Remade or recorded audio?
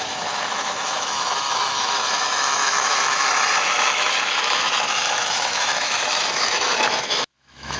remade